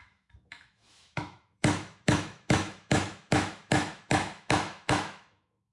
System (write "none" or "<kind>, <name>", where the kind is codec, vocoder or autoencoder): autoencoder, DAC-VAE